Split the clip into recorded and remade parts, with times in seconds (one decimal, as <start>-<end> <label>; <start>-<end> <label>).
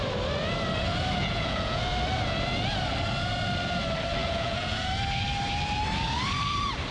0.0-1.2 recorded; 1.2-1.8 remade; 1.8-4.2 recorded; 4.2-4.9 remade; 4.9-6.9 recorded